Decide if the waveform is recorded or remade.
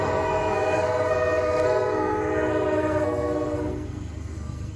remade